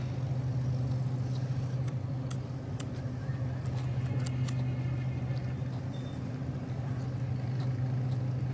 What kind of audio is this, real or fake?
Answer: real